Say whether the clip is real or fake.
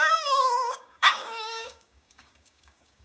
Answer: fake